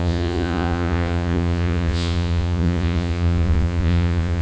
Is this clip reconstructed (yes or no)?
yes